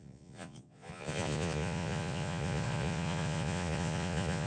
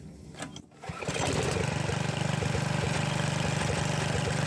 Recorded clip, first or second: second